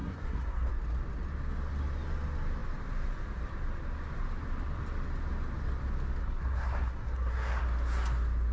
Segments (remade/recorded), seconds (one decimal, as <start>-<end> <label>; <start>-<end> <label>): 0.0-0.7 remade; 0.7-6.2 recorded; 6.2-7.6 remade; 7.6-8.5 recorded